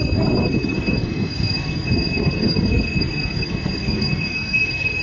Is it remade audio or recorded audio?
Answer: remade